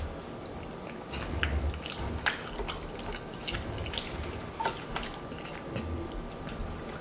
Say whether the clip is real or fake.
real